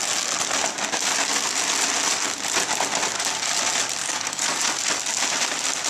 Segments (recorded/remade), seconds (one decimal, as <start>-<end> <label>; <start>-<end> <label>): 0.0-4.0 recorded; 4.0-4.6 remade; 4.6-5.9 recorded